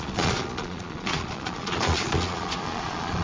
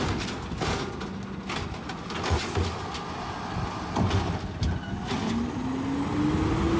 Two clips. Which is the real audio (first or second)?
second